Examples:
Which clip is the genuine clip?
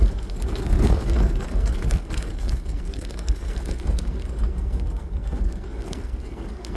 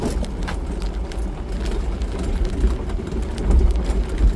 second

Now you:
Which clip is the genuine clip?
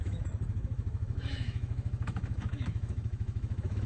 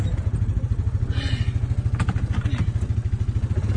second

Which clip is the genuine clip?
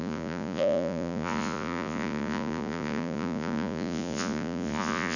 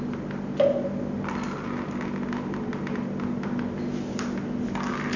second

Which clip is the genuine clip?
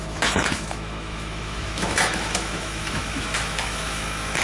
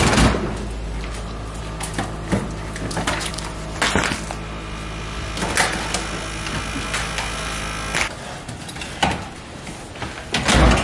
second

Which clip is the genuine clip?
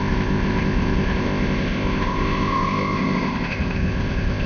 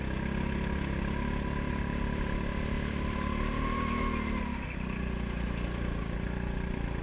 second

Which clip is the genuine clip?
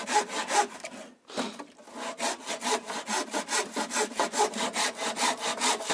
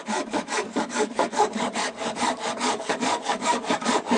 first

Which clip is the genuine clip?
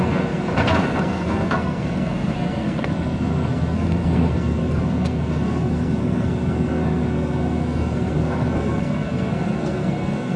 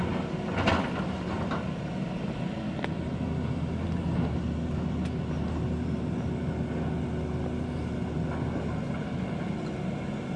second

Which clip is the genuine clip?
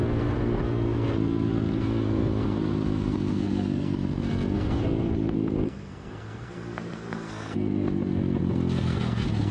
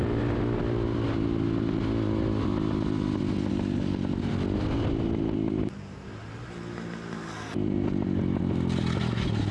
second